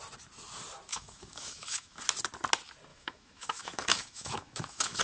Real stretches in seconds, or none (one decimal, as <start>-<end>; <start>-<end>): 0.0-0.9; 2.0-2.9